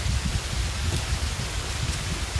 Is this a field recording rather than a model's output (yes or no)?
yes